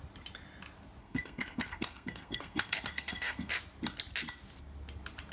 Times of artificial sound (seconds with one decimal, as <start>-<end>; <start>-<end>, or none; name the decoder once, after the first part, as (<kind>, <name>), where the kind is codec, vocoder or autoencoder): 1.0-3.5 (codec, SNAC)